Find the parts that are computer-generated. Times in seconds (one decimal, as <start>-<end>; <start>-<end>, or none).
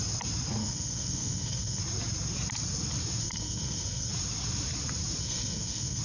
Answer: 0.6-1.8; 3.2-4.1; 5.2-6.0